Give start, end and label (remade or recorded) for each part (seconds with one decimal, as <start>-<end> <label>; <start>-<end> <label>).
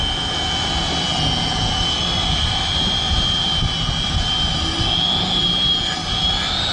0.0-2.2 recorded; 2.2-2.8 remade; 2.8-6.7 recorded